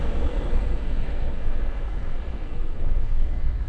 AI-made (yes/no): yes